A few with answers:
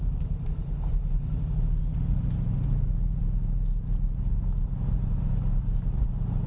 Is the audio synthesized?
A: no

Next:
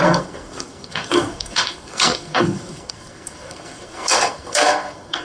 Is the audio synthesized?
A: yes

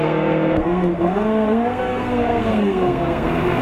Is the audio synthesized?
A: yes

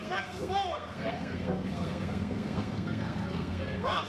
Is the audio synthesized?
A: yes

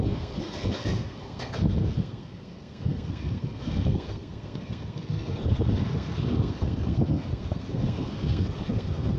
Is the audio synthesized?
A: yes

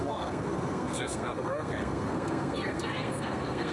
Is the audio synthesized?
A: yes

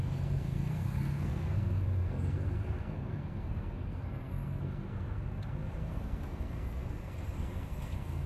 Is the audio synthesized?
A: yes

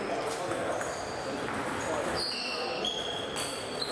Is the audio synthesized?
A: no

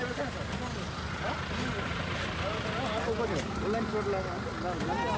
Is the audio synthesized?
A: no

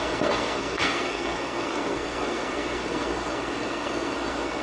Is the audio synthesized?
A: yes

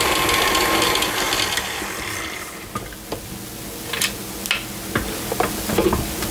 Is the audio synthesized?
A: no